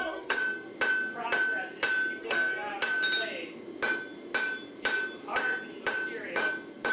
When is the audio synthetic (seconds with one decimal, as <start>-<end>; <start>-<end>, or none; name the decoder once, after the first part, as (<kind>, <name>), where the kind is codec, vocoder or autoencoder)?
0.0-0.4 (codec, SNAC); 2.2-2.7